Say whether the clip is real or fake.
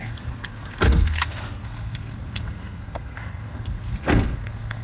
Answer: fake